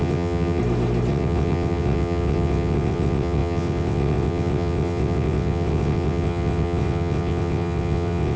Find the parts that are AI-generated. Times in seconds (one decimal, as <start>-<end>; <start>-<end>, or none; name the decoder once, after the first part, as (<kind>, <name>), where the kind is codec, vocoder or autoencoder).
0.0-0.6 (vocoder, WaveNeXt); 1.1-8.4